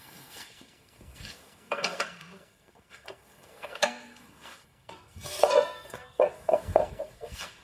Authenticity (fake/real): fake